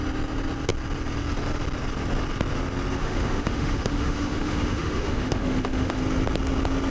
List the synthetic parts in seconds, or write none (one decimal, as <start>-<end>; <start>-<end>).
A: 3.0-6.0

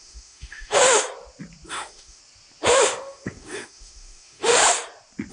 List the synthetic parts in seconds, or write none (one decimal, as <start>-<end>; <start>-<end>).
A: 0.0-1.0; 1.7-2.2; 2.8-4.6

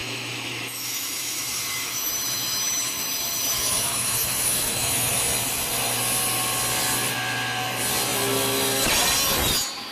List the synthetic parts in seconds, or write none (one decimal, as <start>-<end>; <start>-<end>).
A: 0.0-5.2